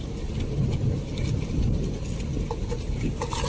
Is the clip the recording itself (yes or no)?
yes